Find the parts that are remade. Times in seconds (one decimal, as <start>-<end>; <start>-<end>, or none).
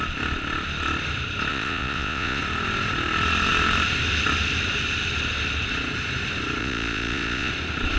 1.5-2.4; 6.6-7.5